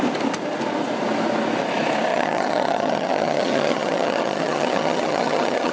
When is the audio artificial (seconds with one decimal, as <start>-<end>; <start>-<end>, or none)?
2.1-5.7